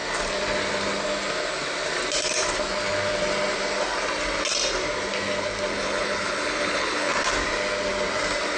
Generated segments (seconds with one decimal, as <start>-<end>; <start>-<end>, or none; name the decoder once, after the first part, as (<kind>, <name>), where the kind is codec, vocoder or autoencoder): 5.7-7.1 (codec, HILCodec)